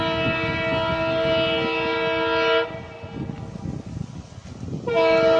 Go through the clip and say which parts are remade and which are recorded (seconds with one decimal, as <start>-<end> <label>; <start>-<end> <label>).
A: 0.0-5.4 recorded